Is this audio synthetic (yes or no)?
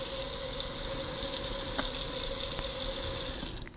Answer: no